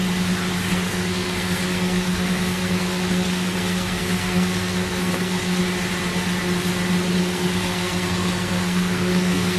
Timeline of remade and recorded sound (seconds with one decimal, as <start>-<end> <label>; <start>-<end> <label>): 0.0-0.7 recorded; 0.7-5.6 remade; 5.6-7.2 recorded; 7.2-9.6 remade